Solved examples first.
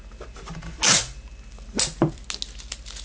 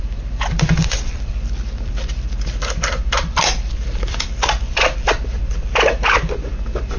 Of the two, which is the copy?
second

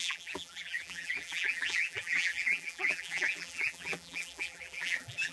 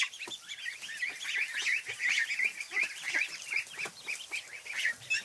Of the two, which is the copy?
first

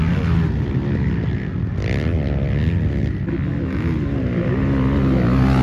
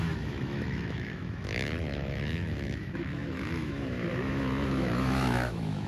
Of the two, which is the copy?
second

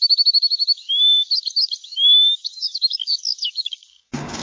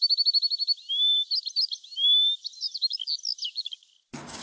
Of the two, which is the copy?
first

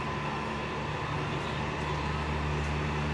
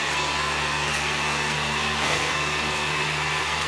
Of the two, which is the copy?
second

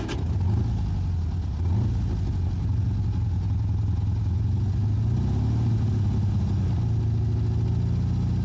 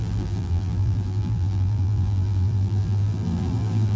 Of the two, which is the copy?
second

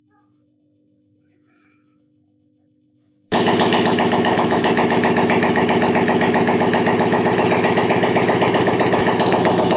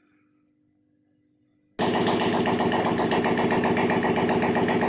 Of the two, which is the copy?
first